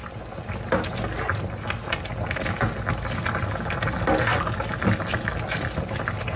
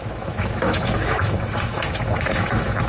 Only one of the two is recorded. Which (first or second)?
first